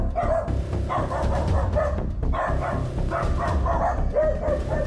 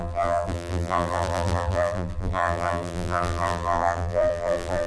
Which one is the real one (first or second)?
first